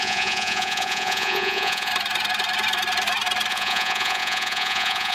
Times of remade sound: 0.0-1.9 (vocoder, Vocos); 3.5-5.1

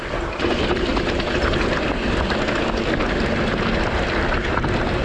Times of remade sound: none

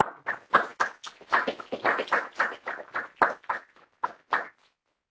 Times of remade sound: none

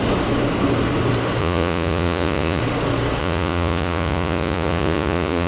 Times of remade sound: 1.4-2.6 (vocoder, Vocos); 3.2-5.5